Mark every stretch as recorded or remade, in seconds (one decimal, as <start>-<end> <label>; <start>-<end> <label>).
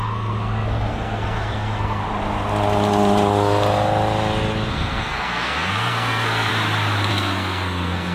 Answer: 0.0-2.0 remade; 2.0-4.7 recorded; 4.7-6.5 remade; 6.5-7.1 recorded; 7.1-8.1 remade